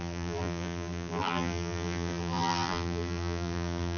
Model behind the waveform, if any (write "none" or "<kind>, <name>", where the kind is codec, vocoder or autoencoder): vocoder, BigVGAN v2